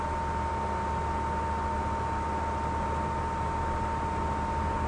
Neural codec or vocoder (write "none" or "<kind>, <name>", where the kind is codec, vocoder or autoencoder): none